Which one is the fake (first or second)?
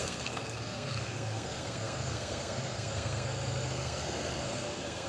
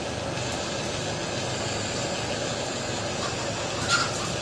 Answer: first